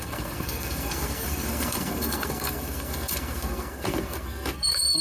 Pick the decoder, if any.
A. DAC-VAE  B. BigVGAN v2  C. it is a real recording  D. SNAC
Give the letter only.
D